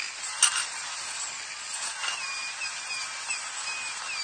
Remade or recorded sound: recorded